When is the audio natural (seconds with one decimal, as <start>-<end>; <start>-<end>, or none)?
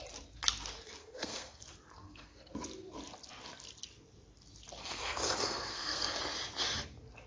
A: 0.0-1.0; 1.6-2.0; 2.5-4.8; 6.2-7.3